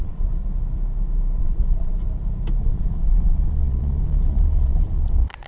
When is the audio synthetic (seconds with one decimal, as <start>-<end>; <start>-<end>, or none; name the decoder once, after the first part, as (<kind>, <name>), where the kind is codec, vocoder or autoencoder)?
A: 0.0-0.4 (vocoder, Vocos); 1.4-1.9; 2.6-5.5